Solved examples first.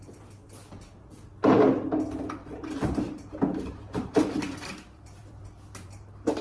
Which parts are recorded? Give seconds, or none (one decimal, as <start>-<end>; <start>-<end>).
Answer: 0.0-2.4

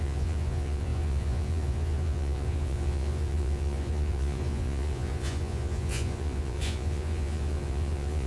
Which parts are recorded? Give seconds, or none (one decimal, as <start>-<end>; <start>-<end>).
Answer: none

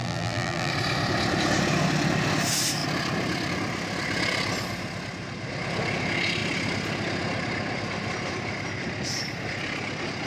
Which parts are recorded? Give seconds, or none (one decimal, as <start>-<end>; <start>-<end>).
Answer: 0.7-10.3